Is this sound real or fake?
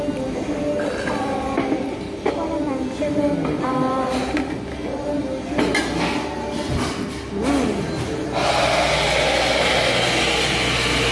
real